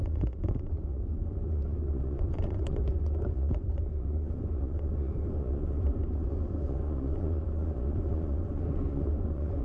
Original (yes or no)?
no